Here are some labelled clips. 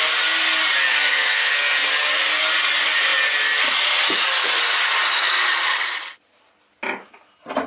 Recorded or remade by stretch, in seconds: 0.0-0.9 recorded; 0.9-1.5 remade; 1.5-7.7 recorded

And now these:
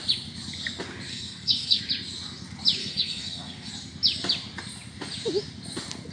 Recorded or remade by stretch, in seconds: 0.0-1.1 recorded; 1.1-1.8 remade; 1.8-2.8 recorded; 2.8-3.7 remade; 3.7-6.1 recorded

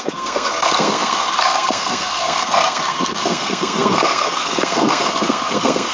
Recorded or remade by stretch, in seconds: 0.0-5.9 remade

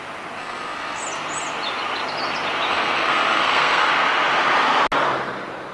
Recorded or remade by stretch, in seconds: 0.0-0.4 recorded; 0.4-1.0 remade; 1.0-2.7 recorded; 2.7-3.9 remade; 3.9-5.7 recorded

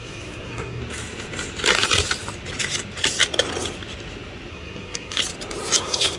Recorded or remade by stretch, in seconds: 0.0-0.8 remade; 0.8-4.5 recorded; 4.5-5.2 remade; 5.2-5.8 recorded; 5.8-6.2 remade